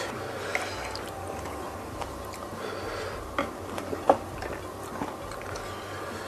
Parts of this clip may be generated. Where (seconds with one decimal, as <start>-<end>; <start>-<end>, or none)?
none